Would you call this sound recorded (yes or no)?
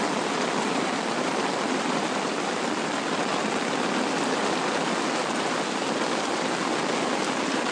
yes